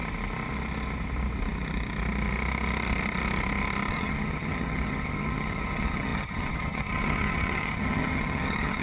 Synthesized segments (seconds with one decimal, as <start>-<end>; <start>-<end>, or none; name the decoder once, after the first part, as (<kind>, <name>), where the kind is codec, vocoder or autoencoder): 3.9-8.8 (vocoder, HiFi-GAN)